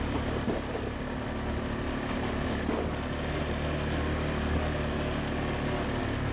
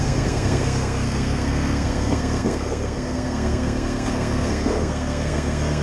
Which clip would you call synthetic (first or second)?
second